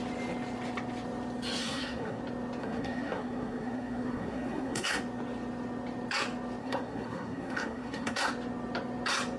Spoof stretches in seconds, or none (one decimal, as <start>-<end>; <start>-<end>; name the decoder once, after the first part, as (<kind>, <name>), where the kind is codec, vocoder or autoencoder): 1.6-2.2 (codec, SNAC); 2.6-5.0; 6.6-8.3